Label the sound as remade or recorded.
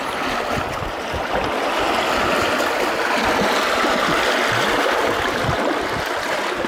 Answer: recorded